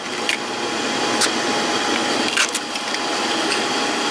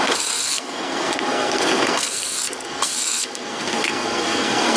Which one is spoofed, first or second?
second